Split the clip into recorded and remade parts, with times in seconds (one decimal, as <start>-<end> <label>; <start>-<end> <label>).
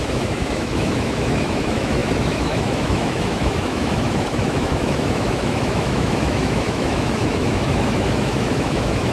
0.0-9.1 remade